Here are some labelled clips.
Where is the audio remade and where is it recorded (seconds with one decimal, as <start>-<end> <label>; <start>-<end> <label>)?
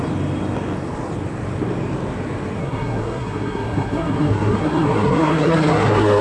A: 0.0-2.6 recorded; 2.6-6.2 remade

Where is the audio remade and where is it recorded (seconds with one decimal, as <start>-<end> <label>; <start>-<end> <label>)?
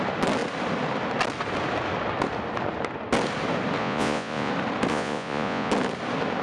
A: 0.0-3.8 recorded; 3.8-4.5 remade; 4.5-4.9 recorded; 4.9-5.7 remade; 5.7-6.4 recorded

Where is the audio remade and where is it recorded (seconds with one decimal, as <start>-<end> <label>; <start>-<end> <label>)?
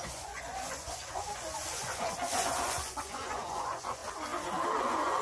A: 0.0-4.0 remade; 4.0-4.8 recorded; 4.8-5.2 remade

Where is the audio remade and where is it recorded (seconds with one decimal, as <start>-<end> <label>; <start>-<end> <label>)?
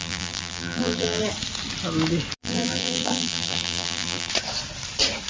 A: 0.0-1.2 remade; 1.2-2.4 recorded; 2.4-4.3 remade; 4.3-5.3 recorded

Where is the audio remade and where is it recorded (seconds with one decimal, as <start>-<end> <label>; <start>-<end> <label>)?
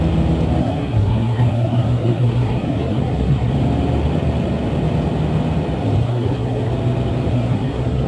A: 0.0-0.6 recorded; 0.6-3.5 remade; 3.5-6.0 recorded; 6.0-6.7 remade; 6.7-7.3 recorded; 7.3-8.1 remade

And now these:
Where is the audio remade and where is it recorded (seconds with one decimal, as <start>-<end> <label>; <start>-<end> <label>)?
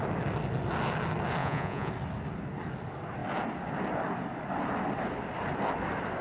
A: 0.0-1.4 recorded; 1.4-1.9 remade; 1.9-6.2 recorded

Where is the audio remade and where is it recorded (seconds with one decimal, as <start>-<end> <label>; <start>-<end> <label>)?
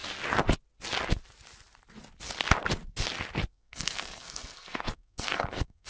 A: 0.0-3.5 recorded; 3.5-5.9 remade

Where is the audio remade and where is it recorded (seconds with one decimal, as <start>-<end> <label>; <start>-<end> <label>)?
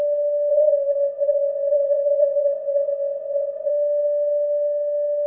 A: 0.0-0.5 recorded; 0.5-3.7 remade; 3.7-5.3 recorded